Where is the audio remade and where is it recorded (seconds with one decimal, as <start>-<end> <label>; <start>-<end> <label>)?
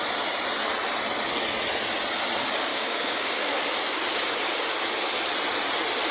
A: 0.0-2.7 recorded; 2.7-3.5 remade; 3.5-6.1 recorded